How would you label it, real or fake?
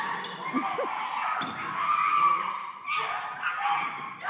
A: real